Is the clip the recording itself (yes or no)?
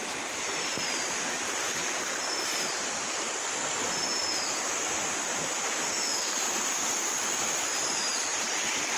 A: yes